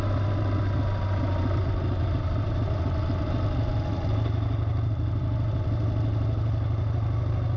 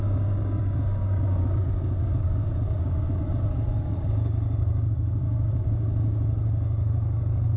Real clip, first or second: first